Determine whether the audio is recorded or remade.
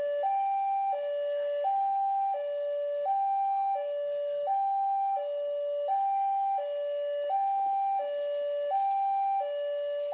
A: recorded